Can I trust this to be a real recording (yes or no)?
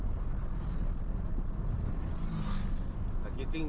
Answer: yes